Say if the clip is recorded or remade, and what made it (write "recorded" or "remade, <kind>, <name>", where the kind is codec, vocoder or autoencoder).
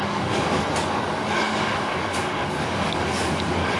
remade, codec, DAC